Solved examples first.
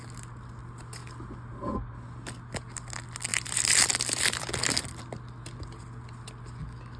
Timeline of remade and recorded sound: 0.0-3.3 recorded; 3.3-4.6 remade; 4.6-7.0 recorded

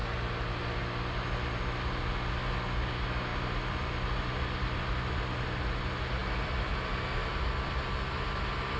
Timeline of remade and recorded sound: 0.0-3.3 recorded; 3.3-4.0 remade; 4.0-6.2 recorded; 6.2-6.7 remade; 6.7-7.2 recorded; 7.2-8.4 remade; 8.4-8.8 recorded